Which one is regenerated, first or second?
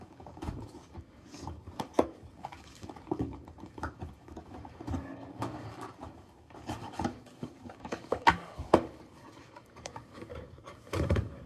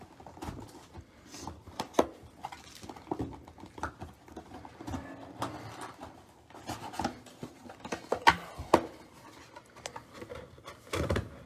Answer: first